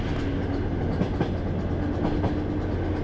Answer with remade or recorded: recorded